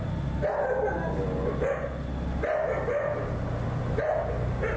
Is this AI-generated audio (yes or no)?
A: no